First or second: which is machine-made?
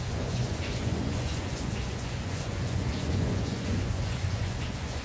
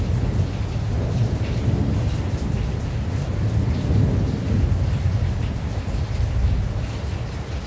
first